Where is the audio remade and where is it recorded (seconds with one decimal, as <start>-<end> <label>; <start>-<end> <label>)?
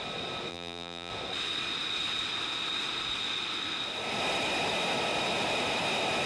0.0-0.5 recorded; 0.5-1.1 remade; 1.1-6.3 recorded